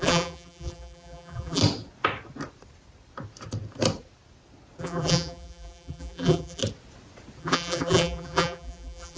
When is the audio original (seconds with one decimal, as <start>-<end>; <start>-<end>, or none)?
1.6-4.8; 6.6-7.4

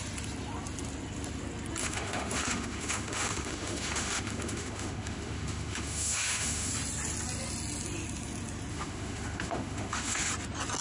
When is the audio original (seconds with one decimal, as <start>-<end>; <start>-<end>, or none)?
0.0-1.8; 6.7-8.7; 10.3-10.8